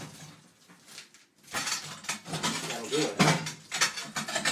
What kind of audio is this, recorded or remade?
recorded